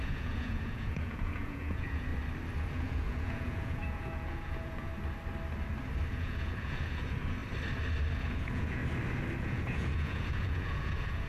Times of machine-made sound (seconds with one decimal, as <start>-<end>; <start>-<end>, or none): 0.0-2.1; 2.6-4.9; 6.1-7.4; 8.1-8.8; 9.4-11.3

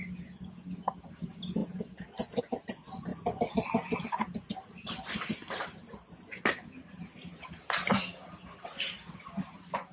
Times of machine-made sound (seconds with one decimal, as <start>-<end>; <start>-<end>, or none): none